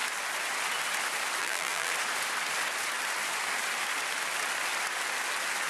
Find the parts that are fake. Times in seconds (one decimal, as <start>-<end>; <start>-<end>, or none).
1.4-1.9